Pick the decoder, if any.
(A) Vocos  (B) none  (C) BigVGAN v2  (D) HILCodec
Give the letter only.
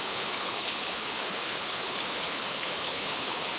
D